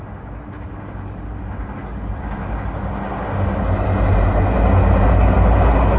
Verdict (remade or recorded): recorded